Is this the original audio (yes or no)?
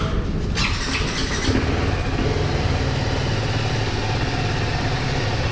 yes